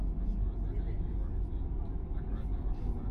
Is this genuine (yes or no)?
yes